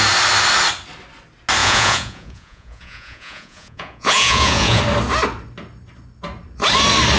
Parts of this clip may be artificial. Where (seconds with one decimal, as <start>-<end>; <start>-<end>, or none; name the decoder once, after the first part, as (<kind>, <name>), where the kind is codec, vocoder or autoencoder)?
1.6-4.8 (vocoder, Vocos)